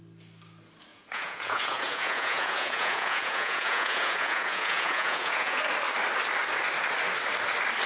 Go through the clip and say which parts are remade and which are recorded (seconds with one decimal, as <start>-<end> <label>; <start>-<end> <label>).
0.0-0.9 recorded; 0.9-5.6 remade; 5.6-7.9 recorded